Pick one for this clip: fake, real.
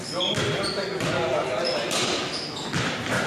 real